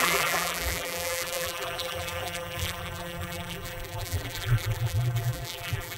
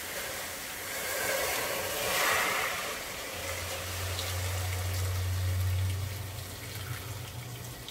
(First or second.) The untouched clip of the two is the second